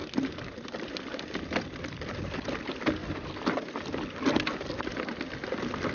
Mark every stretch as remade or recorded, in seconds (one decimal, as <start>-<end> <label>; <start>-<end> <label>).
0.0-3.0 recorded; 3.0-3.8 remade; 3.8-5.9 recorded